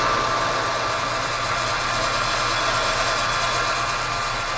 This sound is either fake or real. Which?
real